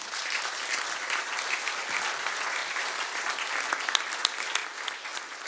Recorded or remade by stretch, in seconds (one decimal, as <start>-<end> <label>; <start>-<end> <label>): 0.0-5.5 recorded